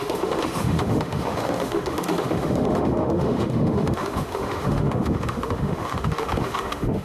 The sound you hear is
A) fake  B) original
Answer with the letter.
A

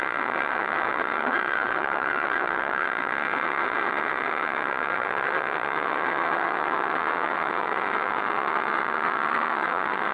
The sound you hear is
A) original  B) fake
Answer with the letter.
B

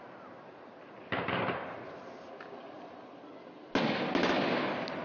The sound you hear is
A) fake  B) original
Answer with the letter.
B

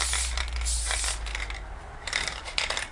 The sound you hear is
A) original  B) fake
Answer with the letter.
A